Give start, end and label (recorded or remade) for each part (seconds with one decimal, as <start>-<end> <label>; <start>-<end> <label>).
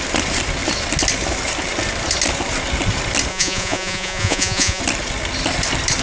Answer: 0.0-3.3 recorded; 3.3-4.8 remade; 4.8-6.0 recorded